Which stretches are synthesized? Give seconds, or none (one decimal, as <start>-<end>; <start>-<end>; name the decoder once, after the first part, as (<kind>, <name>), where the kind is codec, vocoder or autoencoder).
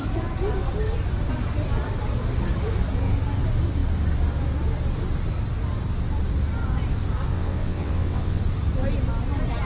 7.3-8.4 (vocoder, WaveNeXt)